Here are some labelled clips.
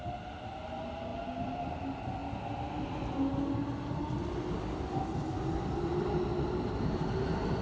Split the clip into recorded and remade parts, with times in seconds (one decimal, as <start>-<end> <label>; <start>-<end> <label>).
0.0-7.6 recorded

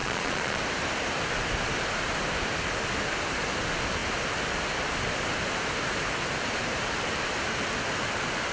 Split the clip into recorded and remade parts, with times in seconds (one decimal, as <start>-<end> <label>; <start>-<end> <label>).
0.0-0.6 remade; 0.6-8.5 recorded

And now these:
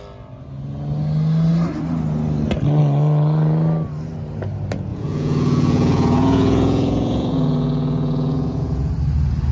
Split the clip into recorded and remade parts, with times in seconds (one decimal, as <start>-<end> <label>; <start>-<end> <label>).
0.0-4.9 recorded; 4.9-8.9 remade; 8.9-9.5 recorded

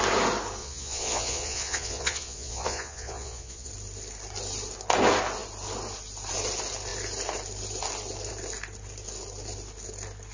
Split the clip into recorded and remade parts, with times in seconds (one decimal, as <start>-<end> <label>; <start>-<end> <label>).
0.0-0.6 recorded; 0.6-3.7 remade; 3.7-10.3 recorded